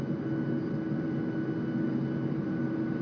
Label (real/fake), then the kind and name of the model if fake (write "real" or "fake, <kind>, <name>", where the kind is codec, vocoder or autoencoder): real